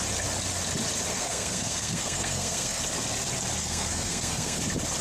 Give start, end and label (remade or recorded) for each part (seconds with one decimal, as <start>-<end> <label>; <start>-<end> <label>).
0.0-1.1 recorded; 1.1-2.8 remade; 2.8-3.6 recorded; 3.6-4.6 remade; 4.6-5.0 recorded